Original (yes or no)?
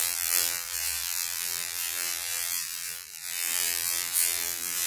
no